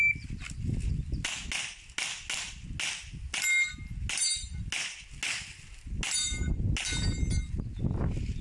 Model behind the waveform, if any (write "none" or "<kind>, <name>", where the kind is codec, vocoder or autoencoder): none